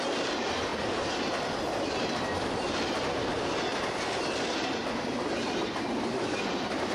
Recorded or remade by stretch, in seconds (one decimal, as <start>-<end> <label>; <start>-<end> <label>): 0.0-0.7 remade; 0.7-2.7 recorded; 2.7-3.7 remade; 3.7-5.9 recorded; 5.9-6.9 remade